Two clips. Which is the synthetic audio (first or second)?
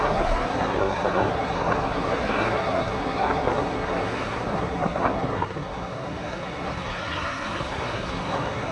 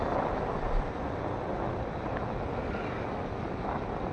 first